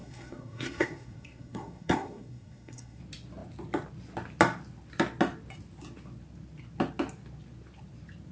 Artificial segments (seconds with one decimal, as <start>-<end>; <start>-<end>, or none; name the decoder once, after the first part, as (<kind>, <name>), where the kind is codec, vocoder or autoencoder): 0.0-3.0 (codec, SNAC)